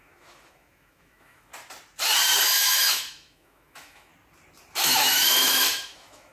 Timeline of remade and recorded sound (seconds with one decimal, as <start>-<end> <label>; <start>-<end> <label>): 0.0-1.5 remade; 1.5-2.4 recorded; 2.4-4.1 remade; 4.1-4.8 recorded; 4.8-6.3 remade